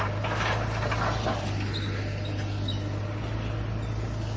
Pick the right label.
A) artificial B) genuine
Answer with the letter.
B